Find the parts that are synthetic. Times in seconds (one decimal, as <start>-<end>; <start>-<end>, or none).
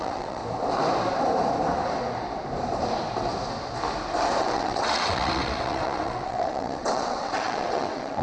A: 0.0-0.4; 4.4-8.2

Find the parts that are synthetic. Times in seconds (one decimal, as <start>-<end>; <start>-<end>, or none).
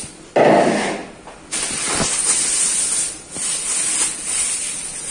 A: none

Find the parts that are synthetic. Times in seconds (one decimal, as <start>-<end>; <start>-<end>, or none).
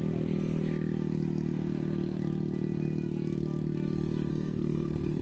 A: 4.3-5.2